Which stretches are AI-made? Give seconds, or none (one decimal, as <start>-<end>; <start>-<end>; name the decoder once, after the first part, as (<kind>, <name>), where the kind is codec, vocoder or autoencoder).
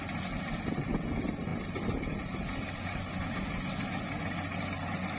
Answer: none